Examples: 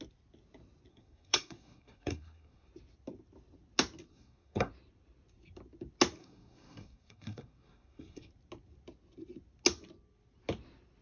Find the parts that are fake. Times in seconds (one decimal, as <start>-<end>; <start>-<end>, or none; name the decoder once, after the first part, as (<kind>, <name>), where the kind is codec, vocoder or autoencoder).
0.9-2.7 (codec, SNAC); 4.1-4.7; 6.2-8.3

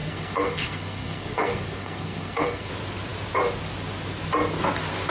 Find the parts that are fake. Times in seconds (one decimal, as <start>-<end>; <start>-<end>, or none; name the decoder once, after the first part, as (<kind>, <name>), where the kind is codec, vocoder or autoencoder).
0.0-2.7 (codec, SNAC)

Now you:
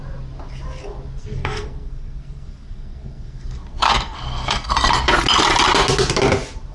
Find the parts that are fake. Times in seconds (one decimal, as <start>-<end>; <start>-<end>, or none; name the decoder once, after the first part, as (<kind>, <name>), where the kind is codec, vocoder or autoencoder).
1.2-4.7 (codec, SNAC)